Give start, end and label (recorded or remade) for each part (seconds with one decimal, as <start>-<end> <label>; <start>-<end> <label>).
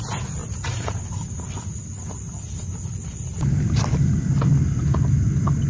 0.0-0.4 recorded; 0.4-1.0 remade; 1.0-5.7 recorded